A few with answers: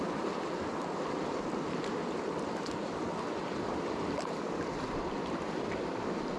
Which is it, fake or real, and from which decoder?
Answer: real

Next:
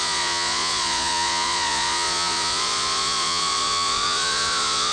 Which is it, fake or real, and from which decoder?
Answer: fake, vocoder, Vocos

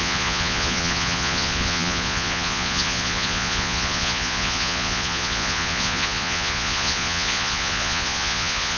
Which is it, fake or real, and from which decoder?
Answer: fake, vocoder, Vocos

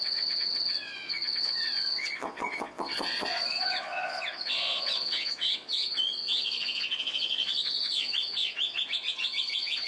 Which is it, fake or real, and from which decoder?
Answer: fake, vocoder, Vocos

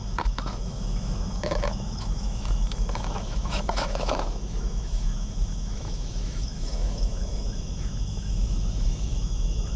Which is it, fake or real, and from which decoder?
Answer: fake, autoencoder, DAC-VAE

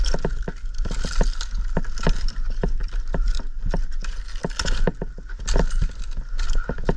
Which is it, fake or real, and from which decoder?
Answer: real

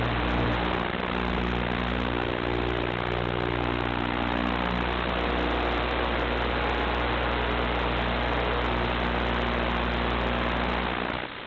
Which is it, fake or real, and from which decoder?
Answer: real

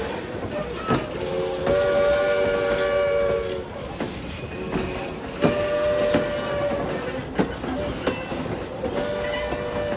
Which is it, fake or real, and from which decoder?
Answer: real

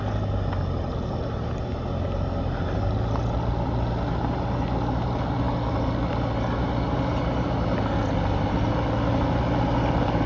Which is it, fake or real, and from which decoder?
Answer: real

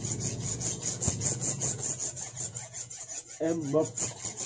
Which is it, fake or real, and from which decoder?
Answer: fake, vocoder, Vocos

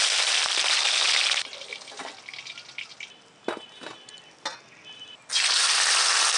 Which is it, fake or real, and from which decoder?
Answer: real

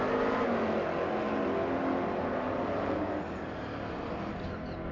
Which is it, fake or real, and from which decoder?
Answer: real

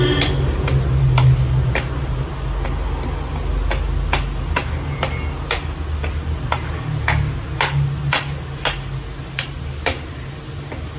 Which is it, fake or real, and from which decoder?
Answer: real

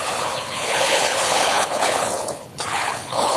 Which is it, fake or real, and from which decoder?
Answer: fake, codec, HILCodec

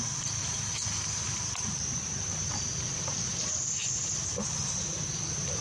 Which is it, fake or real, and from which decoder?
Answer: real